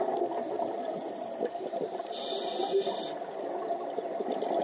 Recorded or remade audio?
recorded